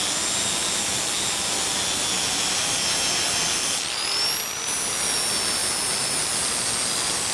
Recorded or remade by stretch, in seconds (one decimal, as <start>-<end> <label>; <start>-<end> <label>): 0.0-7.3 recorded